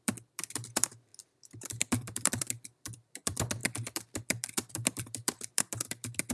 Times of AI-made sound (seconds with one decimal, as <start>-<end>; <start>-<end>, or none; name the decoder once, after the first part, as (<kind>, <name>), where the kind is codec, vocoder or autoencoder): 0.0-6.3 (vocoder, BigVGAN v2)